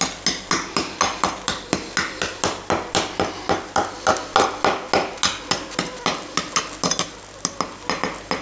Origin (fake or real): real